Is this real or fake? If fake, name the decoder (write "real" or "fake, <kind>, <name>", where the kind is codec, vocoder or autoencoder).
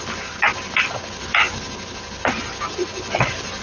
real